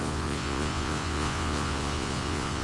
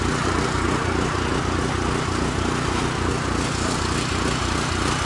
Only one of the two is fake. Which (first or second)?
first